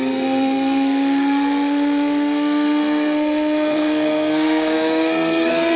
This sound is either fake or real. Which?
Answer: fake